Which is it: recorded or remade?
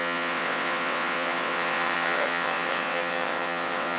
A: remade